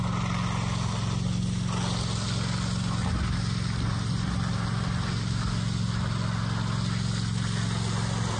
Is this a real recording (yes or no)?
yes